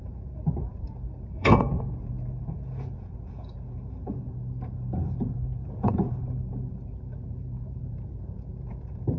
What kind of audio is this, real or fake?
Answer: fake